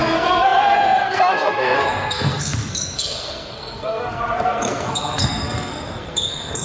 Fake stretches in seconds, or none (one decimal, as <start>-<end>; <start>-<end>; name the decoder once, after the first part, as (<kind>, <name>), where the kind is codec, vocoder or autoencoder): 0.0-6.6 (codec, SNAC)